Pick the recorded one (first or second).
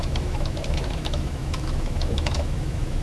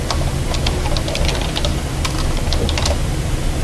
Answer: second